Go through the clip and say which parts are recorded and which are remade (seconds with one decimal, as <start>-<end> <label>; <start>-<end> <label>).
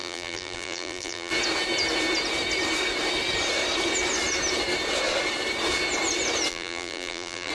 0.0-1.3 remade; 1.3-6.5 recorded; 6.5-7.5 remade